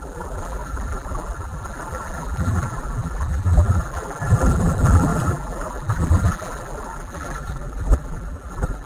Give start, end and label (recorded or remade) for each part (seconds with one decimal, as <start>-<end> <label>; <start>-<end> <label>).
0.0-8.9 remade